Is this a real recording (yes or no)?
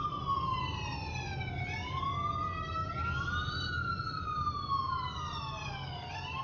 yes